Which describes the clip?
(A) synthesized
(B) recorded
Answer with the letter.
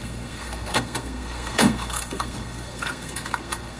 A